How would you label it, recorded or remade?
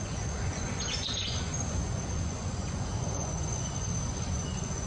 remade